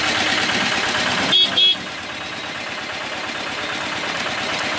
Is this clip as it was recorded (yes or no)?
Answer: yes